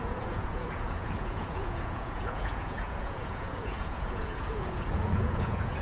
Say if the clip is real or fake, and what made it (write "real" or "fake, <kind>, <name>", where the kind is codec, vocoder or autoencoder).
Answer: fake, vocoder, Vocos